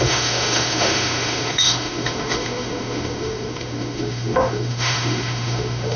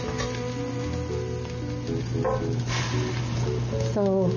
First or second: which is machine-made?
first